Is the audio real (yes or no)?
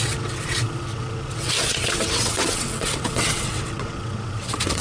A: no